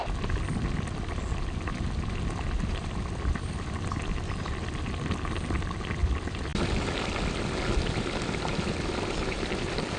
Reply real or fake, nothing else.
real